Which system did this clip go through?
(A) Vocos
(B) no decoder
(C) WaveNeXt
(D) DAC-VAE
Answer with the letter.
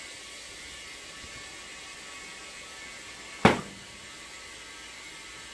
B